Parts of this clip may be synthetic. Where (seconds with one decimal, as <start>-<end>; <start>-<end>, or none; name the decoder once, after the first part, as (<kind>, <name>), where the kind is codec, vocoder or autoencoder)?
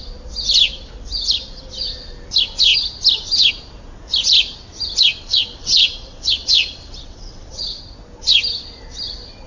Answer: 5.3-7.8 (vocoder, WaveNeXt)